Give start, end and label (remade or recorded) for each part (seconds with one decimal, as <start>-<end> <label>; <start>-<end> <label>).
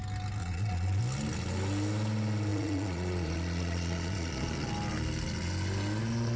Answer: 0.0-0.4 recorded; 0.4-1.0 remade; 1.0-2.5 recorded; 2.5-4.7 remade; 4.7-6.4 recorded